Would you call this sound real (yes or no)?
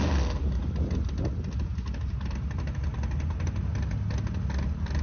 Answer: yes